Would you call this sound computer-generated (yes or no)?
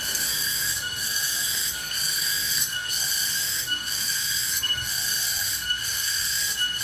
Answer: yes